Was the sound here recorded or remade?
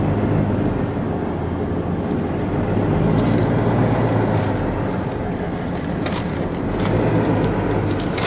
recorded